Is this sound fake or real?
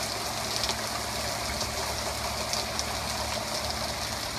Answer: real